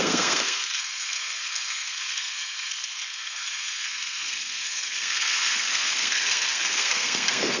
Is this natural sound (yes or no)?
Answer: no